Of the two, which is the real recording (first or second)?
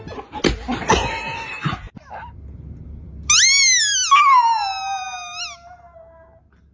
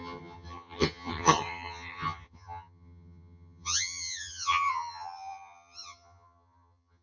first